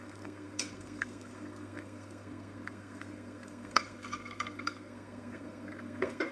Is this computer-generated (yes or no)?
yes